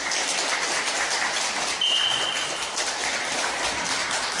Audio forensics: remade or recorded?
remade